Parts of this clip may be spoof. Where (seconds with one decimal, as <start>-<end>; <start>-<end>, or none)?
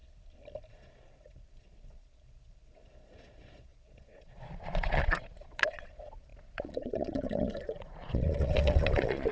0.7-9.3